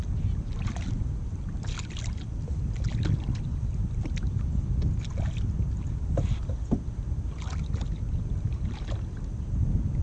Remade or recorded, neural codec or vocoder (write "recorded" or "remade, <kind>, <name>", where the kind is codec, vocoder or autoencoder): recorded